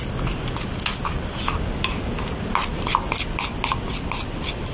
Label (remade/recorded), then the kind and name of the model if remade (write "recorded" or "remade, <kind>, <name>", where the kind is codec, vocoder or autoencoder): recorded